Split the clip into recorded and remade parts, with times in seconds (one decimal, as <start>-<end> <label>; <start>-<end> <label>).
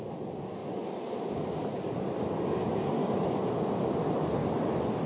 0.0-4.4 recorded; 4.4-5.1 remade